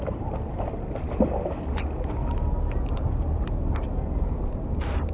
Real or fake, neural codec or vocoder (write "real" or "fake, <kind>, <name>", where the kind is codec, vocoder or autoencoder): real